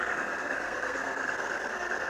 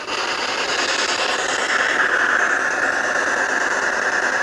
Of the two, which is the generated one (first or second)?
first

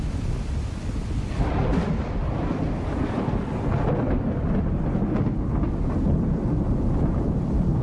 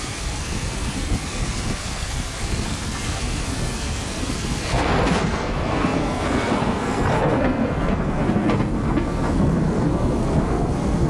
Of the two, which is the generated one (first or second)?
second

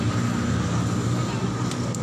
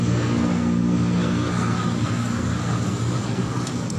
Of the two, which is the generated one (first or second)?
second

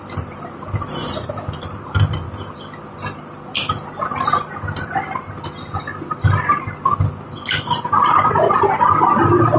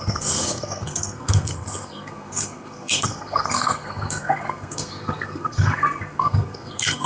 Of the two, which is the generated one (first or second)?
second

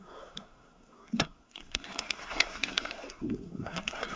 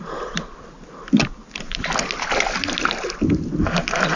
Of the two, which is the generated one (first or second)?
first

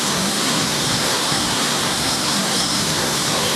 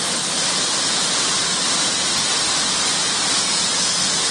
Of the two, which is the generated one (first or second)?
first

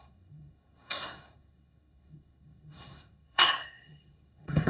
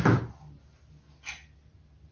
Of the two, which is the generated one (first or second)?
first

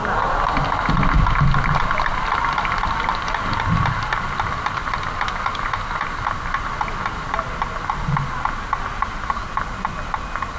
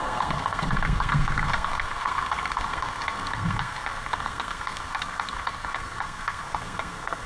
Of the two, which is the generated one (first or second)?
second